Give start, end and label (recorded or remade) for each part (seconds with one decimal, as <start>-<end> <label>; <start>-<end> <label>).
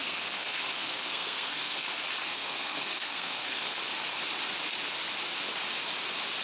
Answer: 0.0-1.8 remade; 1.8-2.2 recorded; 2.2-3.8 remade; 3.8-6.4 recorded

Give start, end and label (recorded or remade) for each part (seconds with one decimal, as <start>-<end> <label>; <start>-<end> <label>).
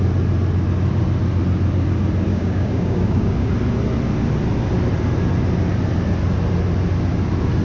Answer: 0.0-2.3 recorded; 2.3-3.5 remade; 3.5-7.6 recorded